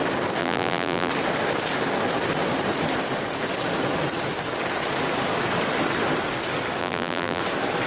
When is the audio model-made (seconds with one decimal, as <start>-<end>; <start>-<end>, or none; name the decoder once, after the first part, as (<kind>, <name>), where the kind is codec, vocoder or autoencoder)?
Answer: 0.4-1.1 (vocoder, BigVGAN v2); 6.8-7.4